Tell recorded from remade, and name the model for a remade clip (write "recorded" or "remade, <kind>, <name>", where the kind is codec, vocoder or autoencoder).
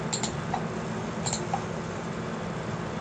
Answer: recorded